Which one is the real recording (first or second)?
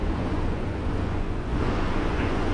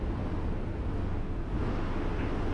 second